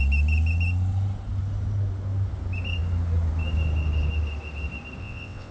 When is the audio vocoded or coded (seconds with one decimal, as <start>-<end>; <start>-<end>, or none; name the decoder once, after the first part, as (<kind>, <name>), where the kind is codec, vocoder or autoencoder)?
5.0-5.5 (vocoder, WaveNeXt)